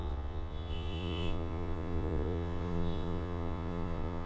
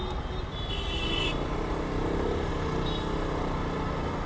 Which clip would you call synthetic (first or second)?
first